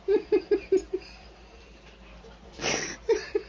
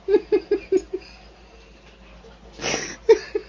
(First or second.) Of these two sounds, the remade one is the first